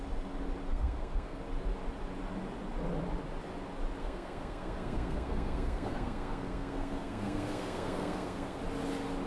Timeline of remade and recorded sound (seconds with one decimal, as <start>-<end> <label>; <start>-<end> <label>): 0.0-0.7 recorded; 0.7-1.4 remade; 1.4-4.0 recorded; 4.0-8.6 remade; 8.6-9.3 recorded